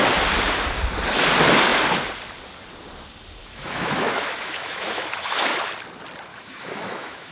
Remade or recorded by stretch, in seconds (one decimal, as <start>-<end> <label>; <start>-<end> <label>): 0.0-3.4 recorded; 3.4-5.6 remade; 5.6-6.3 recorded; 6.3-7.3 remade